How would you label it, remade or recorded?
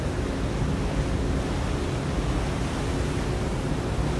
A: recorded